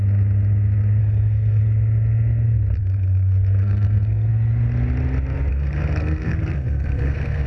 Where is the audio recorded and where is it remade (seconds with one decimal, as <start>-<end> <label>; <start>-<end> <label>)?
0.0-1.0 recorded; 1.0-1.6 remade; 1.6-2.8 recorded; 2.8-4.3 remade; 4.3-5.5 recorded; 5.5-7.5 remade